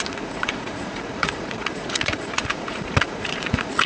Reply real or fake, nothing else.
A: fake